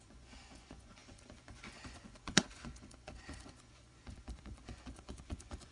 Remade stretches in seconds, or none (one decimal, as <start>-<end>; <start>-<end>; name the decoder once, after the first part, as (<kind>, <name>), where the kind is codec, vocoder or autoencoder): 0.0-5.7 (vocoder, Vocos)